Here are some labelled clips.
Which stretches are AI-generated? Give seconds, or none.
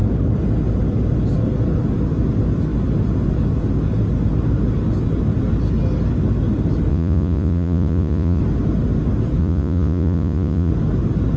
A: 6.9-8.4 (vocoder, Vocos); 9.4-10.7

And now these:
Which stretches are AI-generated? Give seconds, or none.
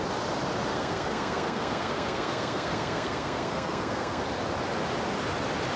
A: 0.7-4.2 (codec, SNAC)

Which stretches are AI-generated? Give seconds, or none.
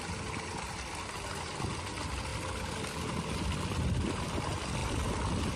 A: none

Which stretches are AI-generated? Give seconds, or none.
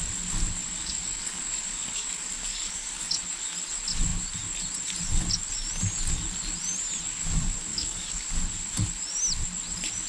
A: 0.6-3.2 (codec, DAC); 7.7-8.3